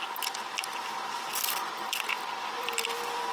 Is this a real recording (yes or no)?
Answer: yes